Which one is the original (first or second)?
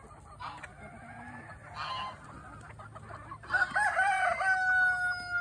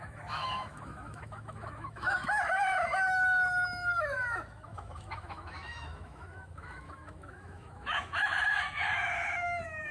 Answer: first